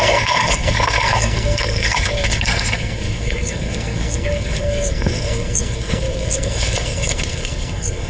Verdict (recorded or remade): remade